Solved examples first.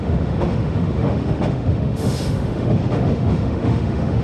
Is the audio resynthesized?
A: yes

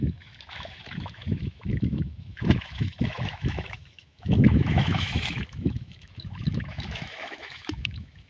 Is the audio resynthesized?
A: yes